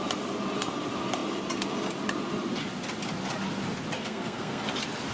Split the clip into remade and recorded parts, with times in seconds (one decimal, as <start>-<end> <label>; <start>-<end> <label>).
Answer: 0.0-4.0 recorded; 4.0-4.6 remade; 4.6-5.1 recorded